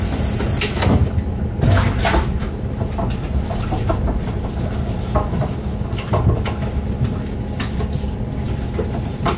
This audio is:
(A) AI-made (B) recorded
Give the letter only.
B